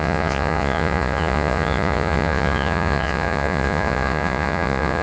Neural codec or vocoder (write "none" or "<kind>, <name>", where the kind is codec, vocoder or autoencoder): vocoder, Vocos